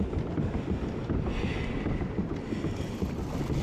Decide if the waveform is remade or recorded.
recorded